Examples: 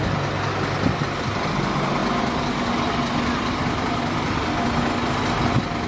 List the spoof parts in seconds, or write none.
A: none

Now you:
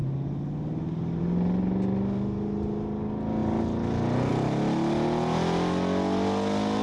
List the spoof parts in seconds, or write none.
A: none

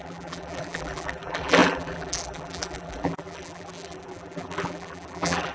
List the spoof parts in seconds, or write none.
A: 0.0-5.5